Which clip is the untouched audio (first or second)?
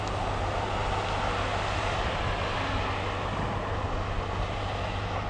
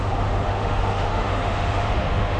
first